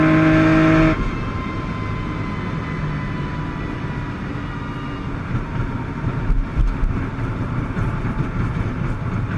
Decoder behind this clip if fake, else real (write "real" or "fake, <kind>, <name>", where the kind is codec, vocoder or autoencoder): real